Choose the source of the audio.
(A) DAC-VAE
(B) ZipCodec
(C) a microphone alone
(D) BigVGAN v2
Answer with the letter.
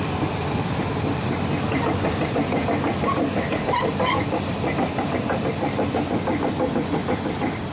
D